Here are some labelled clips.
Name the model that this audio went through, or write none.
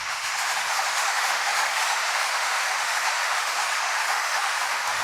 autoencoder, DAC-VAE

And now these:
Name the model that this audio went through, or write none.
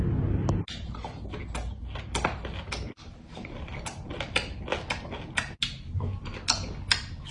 none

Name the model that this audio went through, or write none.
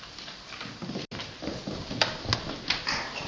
none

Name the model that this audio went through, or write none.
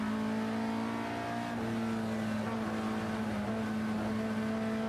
none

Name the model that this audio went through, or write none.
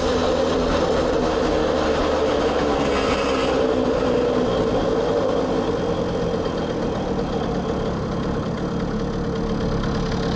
none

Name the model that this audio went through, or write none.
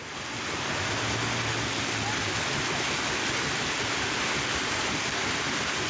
none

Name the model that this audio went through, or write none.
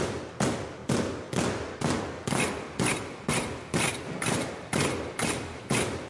none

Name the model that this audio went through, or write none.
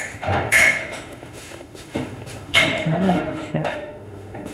autoencoder, DAC-VAE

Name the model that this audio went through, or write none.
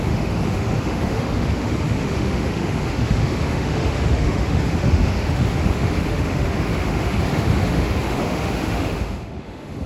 autoencoder, DAC-VAE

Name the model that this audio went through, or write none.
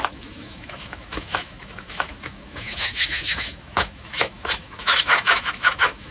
autoencoder, DAC-VAE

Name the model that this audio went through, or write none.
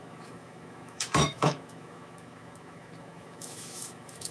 autoencoder, DAC-VAE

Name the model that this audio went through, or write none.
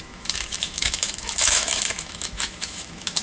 autoencoder, DAC-VAE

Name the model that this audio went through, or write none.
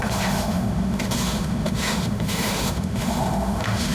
autoencoder, DAC-VAE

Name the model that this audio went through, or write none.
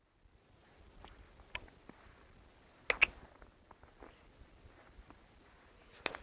none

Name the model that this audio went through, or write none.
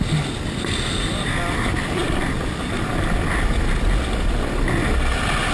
none